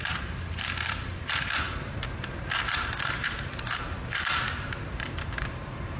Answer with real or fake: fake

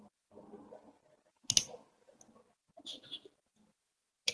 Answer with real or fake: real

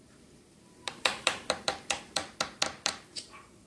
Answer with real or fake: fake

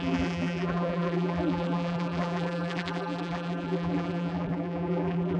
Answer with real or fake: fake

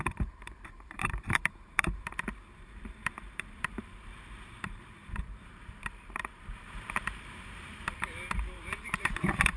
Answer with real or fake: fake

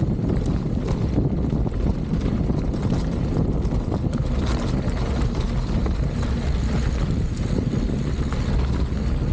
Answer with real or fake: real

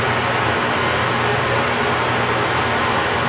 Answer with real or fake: real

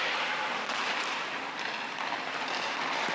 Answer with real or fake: real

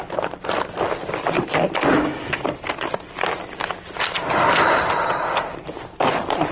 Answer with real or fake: fake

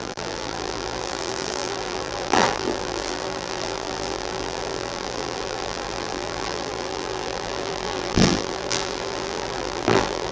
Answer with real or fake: fake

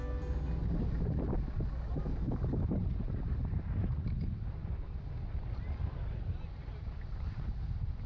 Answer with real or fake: real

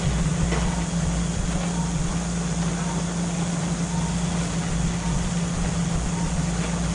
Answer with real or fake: fake